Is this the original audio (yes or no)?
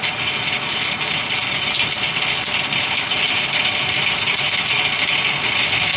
yes